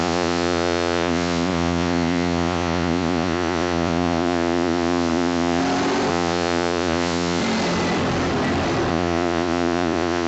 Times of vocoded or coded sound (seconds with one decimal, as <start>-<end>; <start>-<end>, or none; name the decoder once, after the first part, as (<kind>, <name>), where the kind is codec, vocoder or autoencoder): 0.0-5.6 (vocoder, Vocos); 6.1-7.4; 8.9-10.3